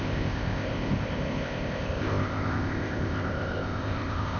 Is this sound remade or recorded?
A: remade